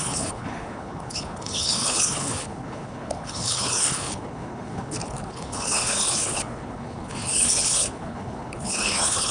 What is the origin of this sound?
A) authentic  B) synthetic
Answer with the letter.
B